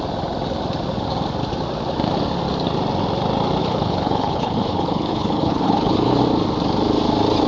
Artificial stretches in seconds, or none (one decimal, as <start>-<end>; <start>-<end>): 3.6-6.2